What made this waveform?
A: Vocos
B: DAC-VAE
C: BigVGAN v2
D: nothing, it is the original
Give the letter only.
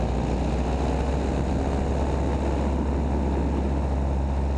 D